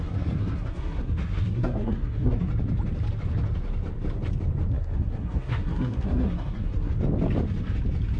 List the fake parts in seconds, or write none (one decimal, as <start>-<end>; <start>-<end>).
0.0-2.5; 4.7-6.9